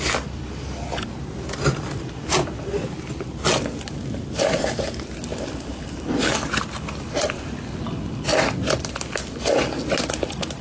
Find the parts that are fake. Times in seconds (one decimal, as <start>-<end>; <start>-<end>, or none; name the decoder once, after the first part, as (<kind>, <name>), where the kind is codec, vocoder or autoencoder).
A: 5.3-7.6 (vocoder, BigVGAN v2)